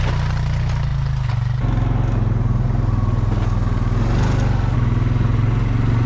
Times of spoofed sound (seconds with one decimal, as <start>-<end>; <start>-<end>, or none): none